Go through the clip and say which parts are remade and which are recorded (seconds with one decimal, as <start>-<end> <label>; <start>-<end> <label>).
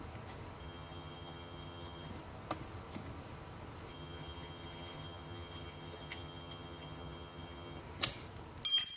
0.0-0.6 recorded; 0.6-2.1 remade; 2.1-3.9 recorded; 3.9-7.8 remade; 7.8-9.0 recorded